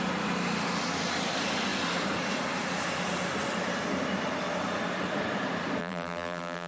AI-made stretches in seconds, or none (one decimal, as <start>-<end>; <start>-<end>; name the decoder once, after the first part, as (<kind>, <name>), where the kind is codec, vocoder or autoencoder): 5.8-6.7 (vocoder, BigVGAN v2)